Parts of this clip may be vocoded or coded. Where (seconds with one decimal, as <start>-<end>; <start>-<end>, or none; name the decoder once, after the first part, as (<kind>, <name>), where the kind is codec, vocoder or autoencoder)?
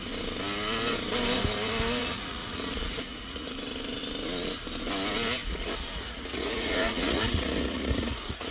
2.0-3.5 (vocoder, Vocos); 5.4-8.5